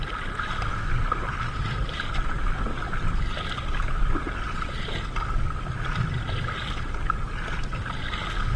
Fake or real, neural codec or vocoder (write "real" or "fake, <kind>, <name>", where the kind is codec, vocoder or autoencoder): real